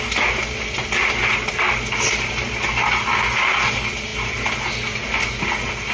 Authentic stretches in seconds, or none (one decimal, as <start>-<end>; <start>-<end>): 0.0-5.9